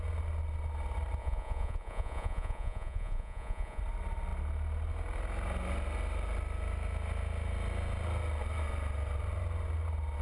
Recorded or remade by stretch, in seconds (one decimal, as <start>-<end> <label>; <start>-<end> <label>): 0.0-1.2 recorded; 1.2-3.8 remade; 3.8-10.2 recorded